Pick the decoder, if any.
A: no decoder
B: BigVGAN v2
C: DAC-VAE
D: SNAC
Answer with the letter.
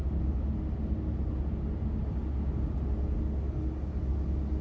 A